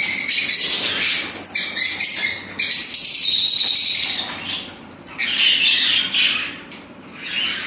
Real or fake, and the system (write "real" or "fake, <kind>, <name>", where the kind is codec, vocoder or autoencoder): real